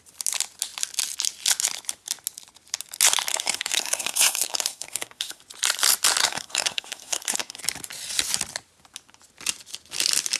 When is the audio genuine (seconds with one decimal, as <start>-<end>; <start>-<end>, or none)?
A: 0.0-3.3; 5.4-6.2; 7.6-10.4